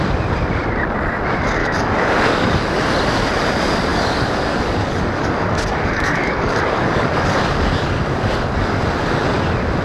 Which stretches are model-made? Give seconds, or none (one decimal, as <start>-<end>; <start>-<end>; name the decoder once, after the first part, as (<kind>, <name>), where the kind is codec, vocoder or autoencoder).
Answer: 1.6-2.8 (codec, DAC); 3.9-8.8